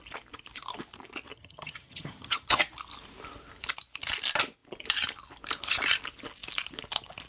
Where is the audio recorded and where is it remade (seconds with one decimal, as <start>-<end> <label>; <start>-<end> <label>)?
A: 0.0-1.3 recorded; 1.3-2.6 remade; 2.6-7.3 recorded